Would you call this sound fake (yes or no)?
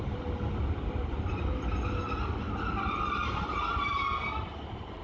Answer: no